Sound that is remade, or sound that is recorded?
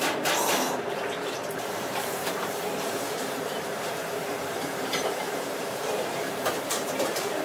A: remade